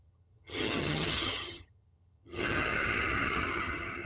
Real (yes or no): no